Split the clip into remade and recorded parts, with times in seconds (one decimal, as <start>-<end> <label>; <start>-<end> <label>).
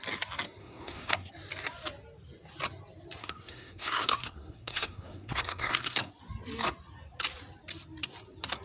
0.0-0.6 recorded; 0.6-1.3 remade; 1.3-3.2 recorded; 3.2-6.1 remade; 6.1-8.6 recorded